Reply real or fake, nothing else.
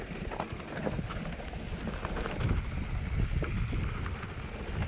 real